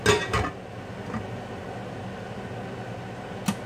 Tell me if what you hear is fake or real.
real